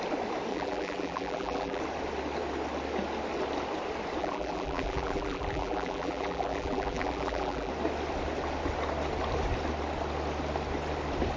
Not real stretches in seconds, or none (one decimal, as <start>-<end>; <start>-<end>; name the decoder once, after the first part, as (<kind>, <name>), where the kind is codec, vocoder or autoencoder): 0.5-1.8 (vocoder, BigVGAN v2); 4.2-7.7